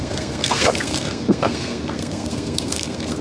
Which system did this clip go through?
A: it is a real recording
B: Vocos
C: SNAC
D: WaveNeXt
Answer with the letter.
C